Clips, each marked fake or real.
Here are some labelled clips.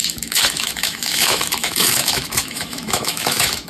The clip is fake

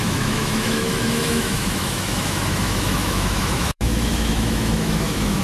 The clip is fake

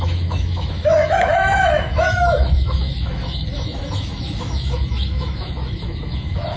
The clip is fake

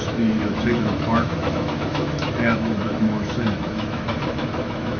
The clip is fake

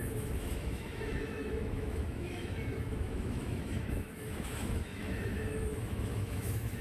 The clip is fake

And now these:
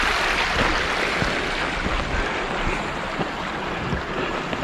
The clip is real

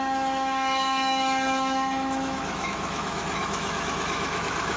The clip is fake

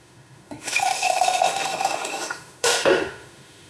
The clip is fake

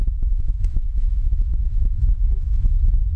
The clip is fake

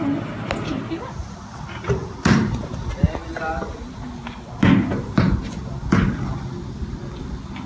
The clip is real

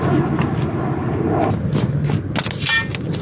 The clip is real